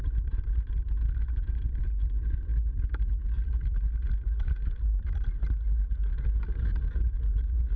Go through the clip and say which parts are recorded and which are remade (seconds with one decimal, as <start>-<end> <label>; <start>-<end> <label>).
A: 0.0-7.8 remade